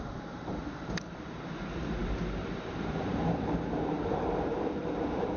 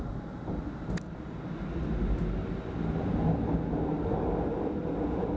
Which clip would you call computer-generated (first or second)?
first